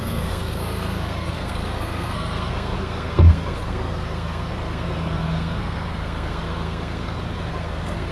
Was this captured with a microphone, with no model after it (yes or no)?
no